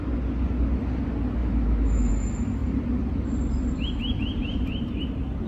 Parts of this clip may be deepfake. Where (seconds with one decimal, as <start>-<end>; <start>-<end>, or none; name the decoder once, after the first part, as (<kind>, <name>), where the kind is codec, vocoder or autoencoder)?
1.4-2.1 (autoencoder, DAC-VAE)